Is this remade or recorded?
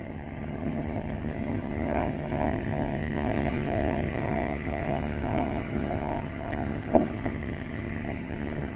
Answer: remade